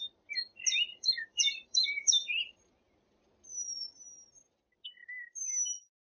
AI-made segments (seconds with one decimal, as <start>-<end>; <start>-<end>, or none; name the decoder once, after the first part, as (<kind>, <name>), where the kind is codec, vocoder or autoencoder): 0.9-3.2 (vocoder, BigVGAN v2)